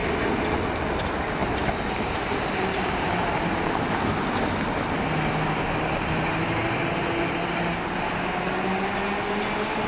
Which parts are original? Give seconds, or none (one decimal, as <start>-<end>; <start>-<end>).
0.0-1.4; 4.4-9.9